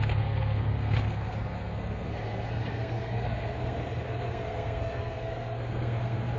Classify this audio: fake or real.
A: fake